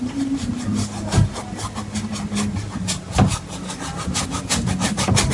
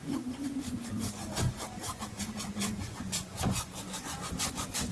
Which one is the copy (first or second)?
second